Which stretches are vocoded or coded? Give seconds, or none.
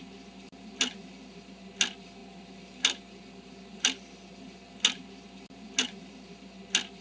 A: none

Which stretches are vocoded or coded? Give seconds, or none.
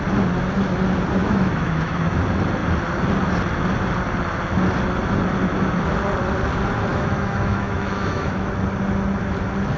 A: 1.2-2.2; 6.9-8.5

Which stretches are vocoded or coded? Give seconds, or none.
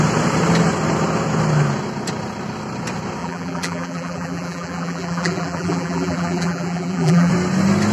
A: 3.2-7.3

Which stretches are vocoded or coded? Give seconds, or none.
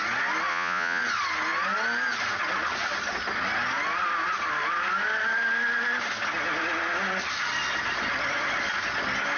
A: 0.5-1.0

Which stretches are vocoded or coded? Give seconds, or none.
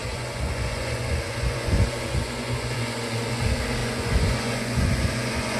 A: 0.0-3.4; 3.8-5.6